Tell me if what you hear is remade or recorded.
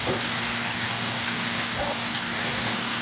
remade